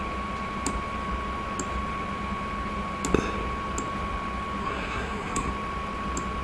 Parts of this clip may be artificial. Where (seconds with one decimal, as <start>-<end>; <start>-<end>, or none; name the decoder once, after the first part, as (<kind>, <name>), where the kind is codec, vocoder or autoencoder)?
4.6-5.5 (codec, SNAC)